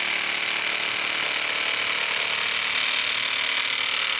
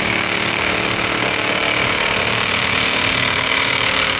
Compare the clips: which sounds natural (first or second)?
first